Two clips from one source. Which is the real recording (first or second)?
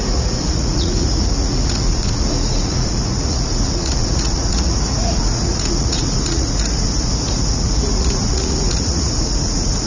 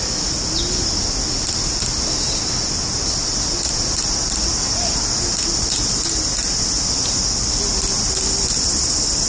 second